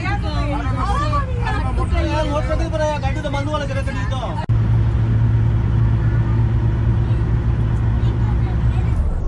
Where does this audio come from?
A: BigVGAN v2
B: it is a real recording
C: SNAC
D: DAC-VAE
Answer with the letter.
B